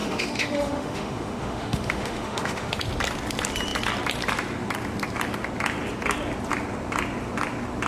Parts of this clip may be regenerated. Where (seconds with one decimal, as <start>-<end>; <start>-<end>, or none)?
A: 0.0-2.8